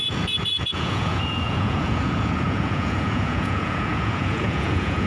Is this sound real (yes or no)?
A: no